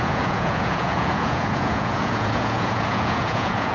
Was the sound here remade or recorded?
remade